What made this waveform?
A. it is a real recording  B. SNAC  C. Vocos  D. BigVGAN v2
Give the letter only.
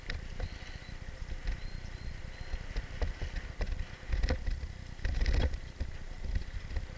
A